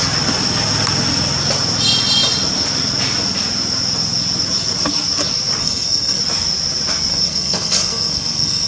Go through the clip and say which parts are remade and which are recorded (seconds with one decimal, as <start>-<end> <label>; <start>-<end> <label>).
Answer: 0.0-5.6 recorded; 5.6-6.2 remade; 6.2-7.1 recorded; 7.1-8.7 remade